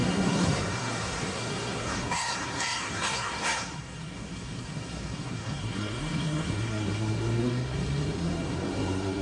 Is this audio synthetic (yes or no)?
yes